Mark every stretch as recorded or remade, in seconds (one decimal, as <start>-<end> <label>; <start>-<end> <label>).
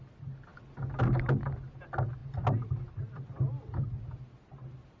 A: 0.0-5.0 recorded